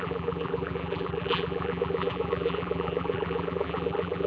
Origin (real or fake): fake